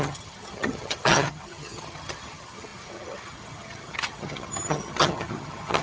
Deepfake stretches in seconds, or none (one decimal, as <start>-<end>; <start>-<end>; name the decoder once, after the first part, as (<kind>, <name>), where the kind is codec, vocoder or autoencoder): 0.0-5.8 (vocoder, HiFi-GAN)